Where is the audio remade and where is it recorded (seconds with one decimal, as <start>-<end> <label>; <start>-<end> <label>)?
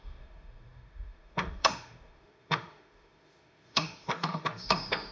0.0-5.1 remade